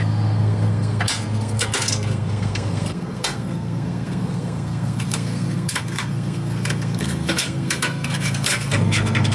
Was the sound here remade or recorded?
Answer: remade